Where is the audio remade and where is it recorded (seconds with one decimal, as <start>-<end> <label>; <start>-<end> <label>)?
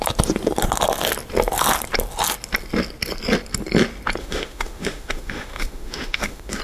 0.0-4.2 recorded; 4.2-6.6 remade